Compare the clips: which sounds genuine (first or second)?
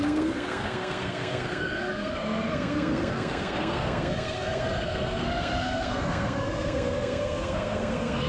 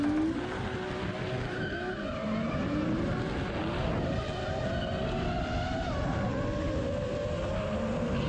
second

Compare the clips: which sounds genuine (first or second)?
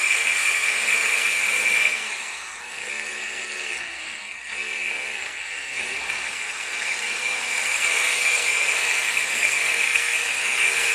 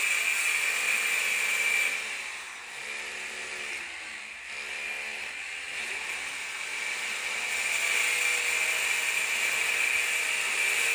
second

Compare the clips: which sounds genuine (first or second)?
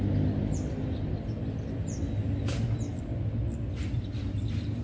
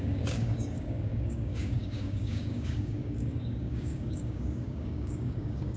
first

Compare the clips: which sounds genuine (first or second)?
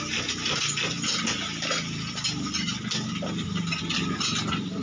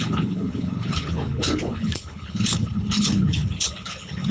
first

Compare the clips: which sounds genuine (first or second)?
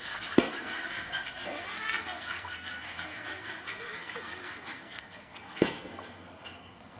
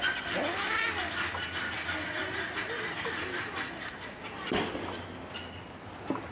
second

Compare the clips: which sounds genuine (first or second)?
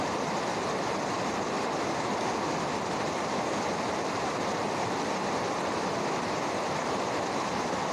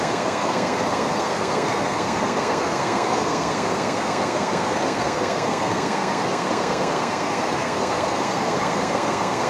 first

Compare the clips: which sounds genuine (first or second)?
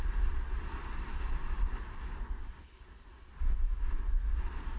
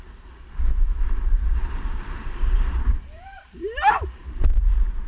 first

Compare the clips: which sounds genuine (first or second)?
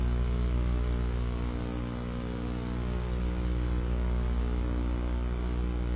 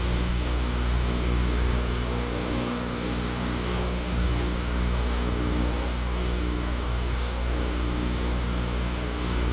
first